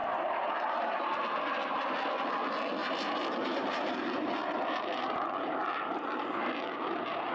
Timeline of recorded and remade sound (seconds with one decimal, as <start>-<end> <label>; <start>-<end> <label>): 0.0-2.8 recorded; 2.8-5.6 remade; 5.6-7.3 recorded